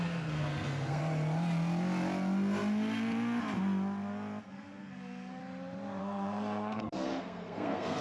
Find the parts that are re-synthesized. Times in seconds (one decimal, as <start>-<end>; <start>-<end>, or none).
0.0-1.0; 4.4-5.4; 6.0-8.0